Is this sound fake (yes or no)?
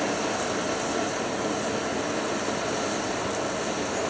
no